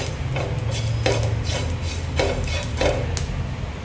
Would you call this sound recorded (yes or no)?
yes